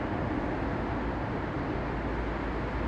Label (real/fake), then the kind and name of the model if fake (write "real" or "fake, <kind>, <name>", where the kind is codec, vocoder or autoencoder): real